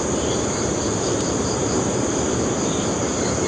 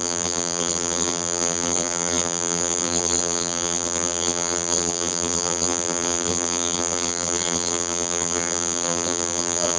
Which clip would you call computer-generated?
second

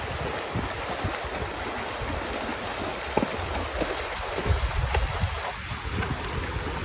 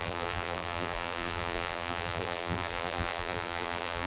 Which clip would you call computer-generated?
second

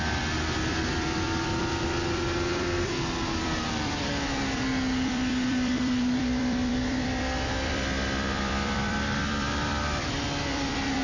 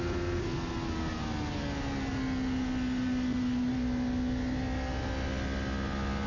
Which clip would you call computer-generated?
first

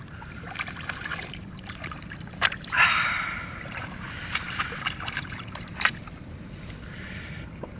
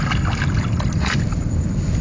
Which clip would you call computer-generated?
first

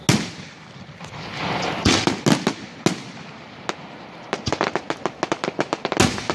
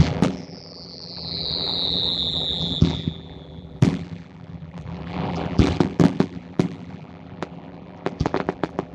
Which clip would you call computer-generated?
second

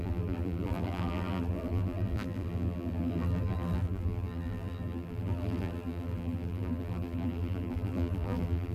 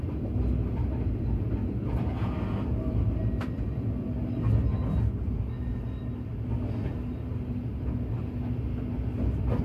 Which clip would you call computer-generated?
first